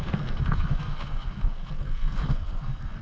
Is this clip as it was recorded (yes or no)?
no